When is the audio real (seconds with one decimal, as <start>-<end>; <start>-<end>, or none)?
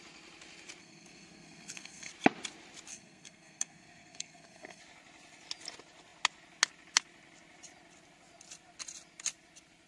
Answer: 0.0-0.8; 2.1-2.9; 4.8-9.9